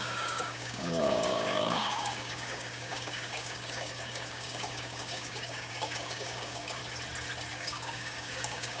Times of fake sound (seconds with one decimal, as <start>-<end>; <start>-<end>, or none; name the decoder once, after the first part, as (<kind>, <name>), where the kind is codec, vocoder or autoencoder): 0.0-6.8 (codec, DAC); 7.5-8.8